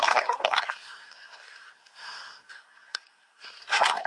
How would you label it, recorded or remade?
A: remade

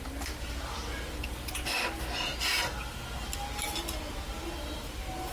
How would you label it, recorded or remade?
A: recorded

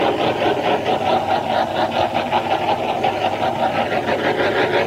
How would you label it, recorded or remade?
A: recorded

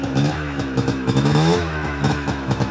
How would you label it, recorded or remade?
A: remade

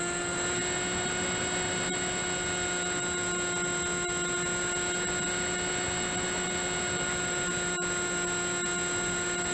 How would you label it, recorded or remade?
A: recorded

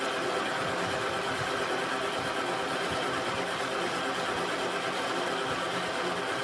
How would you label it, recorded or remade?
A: recorded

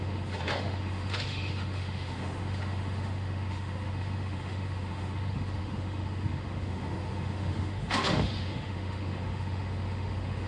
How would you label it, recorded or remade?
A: remade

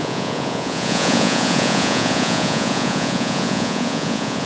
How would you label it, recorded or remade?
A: remade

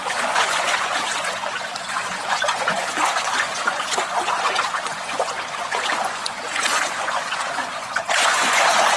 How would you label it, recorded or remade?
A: remade